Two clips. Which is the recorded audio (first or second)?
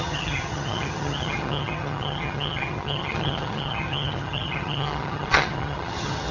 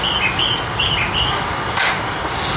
second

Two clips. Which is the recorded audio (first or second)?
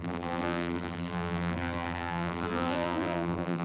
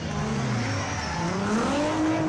second